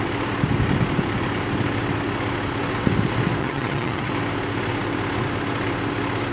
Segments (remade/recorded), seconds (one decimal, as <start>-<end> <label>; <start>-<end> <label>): 0.0-3.4 recorded; 3.4-4.1 remade; 4.1-6.3 recorded